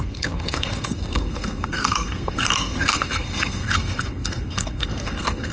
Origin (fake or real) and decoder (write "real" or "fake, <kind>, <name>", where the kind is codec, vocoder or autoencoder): fake, codec, SNAC